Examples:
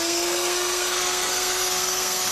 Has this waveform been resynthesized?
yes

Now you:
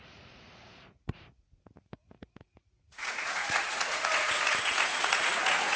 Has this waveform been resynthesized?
yes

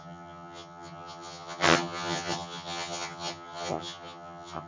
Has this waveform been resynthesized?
yes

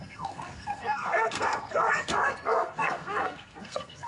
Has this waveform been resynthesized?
yes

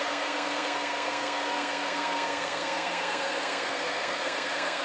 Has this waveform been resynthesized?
yes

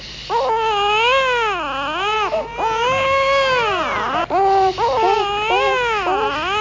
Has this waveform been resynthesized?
no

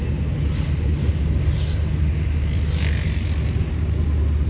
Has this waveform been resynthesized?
no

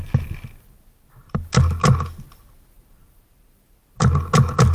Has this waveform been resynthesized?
no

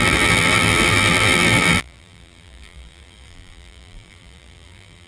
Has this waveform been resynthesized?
yes